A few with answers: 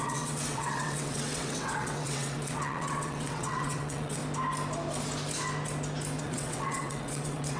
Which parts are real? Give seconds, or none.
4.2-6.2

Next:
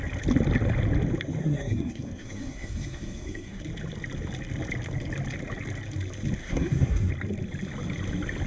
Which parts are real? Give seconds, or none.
0.0-1.4; 3.6-6.4; 7.1-8.5

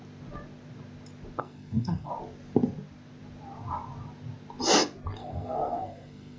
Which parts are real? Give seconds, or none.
0.0-1.4; 2.1-5.2

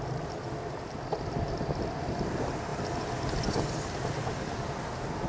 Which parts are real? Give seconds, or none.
0.0-5.3